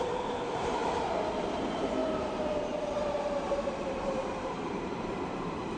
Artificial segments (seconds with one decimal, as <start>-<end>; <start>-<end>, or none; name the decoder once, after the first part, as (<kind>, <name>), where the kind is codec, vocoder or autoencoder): 0.0-0.8 (vocoder, BigVGAN v2); 1.4-5.8